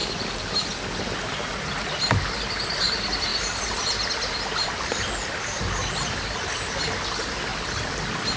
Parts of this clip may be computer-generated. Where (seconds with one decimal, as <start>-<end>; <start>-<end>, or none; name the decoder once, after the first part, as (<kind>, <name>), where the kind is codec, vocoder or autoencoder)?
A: 7.5-8.4 (vocoder, BigVGAN v2)